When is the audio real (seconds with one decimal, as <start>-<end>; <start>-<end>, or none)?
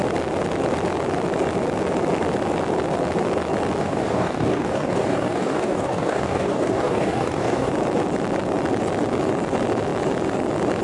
0.0-3.8; 7.7-10.8